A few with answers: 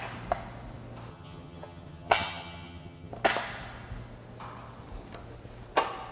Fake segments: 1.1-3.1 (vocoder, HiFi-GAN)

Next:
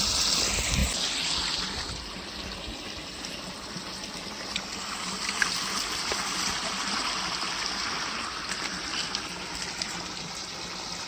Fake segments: none